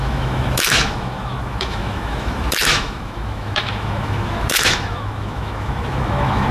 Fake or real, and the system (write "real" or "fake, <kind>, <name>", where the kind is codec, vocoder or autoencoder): fake, autoencoder, DAC-VAE